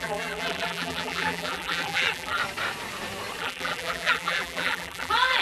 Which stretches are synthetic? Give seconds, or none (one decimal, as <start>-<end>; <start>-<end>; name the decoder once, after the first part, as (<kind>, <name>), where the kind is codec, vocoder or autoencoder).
0.0-2.4 (vocoder, BigVGAN v2); 3.4-5.4